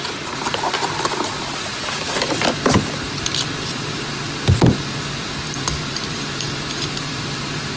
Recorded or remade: remade